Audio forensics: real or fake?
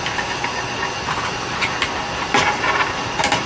real